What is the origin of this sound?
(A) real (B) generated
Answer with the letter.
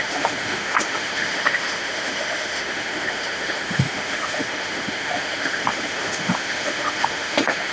B